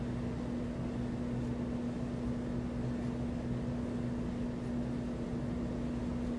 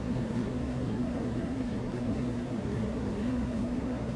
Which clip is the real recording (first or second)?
first